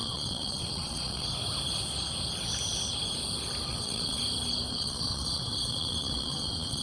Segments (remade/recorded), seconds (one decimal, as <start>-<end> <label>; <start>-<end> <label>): 0.0-1.3 remade; 1.3-3.7 recorded; 3.7-4.2 remade; 4.2-4.7 recorded; 4.7-6.8 remade